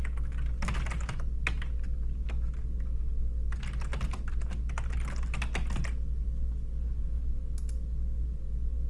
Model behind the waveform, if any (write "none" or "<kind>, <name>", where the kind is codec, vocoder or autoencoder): none